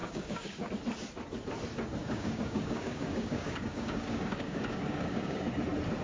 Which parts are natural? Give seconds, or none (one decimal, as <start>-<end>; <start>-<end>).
0.7-2.0; 5.5-6.0